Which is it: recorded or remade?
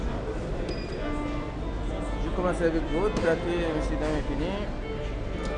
recorded